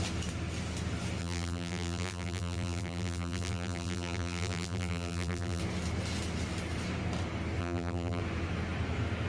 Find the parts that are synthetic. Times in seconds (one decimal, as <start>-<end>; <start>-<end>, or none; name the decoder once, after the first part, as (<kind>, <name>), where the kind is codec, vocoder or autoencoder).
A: 1.2-5.6 (vocoder, BigVGAN v2); 7.6-8.2